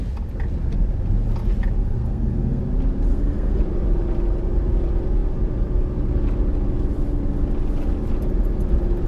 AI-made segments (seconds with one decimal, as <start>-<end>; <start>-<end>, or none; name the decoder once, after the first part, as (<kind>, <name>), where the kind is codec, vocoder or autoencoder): 1.8-2.6 (codec, SNAC); 3.1-3.6